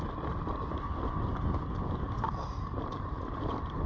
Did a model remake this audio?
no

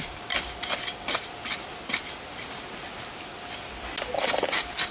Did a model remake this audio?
no